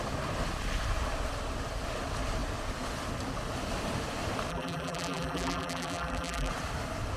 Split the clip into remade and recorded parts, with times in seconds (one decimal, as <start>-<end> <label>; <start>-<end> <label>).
0.0-4.5 recorded; 4.5-6.5 remade; 6.5-7.2 recorded